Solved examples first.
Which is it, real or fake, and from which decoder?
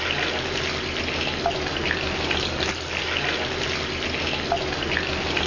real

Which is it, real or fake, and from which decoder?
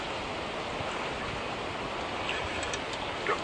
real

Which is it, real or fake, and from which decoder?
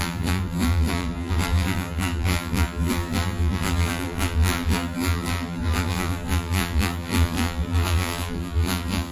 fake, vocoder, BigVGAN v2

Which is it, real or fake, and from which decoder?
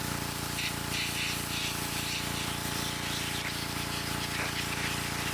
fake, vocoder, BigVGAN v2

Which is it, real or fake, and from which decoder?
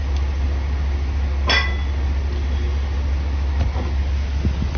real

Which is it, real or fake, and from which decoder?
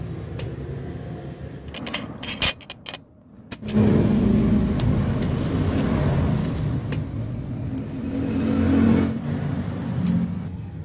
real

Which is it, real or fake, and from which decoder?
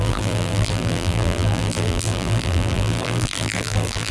fake, vocoder, BigVGAN v2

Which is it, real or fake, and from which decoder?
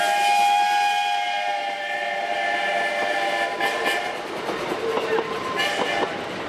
real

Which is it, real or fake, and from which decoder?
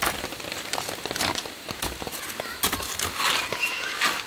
real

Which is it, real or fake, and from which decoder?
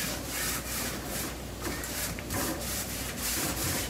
fake, vocoder, BigVGAN v2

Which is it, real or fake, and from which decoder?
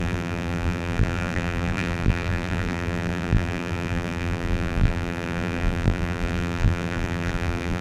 fake, vocoder, BigVGAN v2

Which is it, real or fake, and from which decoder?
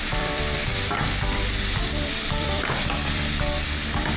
fake, vocoder, BigVGAN v2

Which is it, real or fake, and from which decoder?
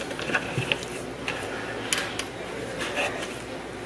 real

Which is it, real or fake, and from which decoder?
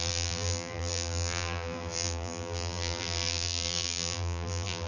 fake, vocoder, BigVGAN v2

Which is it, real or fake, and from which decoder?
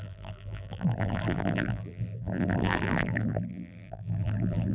fake, vocoder, BigVGAN v2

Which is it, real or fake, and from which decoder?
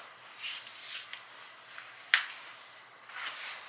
real